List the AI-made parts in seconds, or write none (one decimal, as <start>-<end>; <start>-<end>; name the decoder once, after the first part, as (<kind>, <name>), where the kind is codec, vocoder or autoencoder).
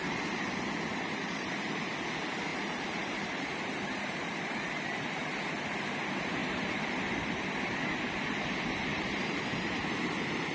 0.9-1.8 (vocoder, BigVGAN v2); 2.5-5.4; 6.4-7.4; 8.9-9.4